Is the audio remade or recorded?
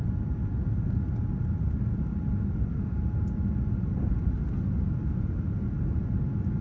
recorded